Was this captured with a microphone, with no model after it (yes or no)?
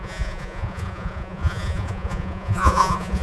no